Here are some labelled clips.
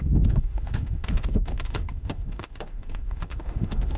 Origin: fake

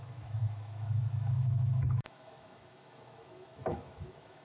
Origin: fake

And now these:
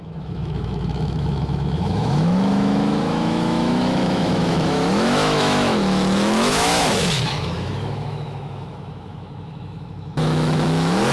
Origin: fake